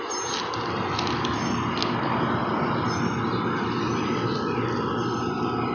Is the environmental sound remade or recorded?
recorded